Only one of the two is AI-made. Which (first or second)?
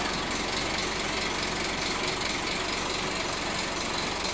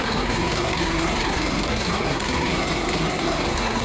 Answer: second